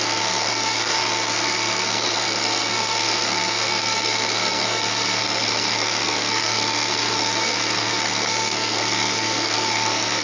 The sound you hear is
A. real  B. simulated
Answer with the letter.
B